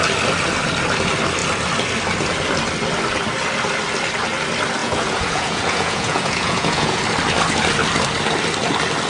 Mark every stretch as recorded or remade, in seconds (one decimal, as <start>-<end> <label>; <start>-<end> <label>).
0.0-4.8 recorded; 4.8-7.0 remade; 7.0-9.1 recorded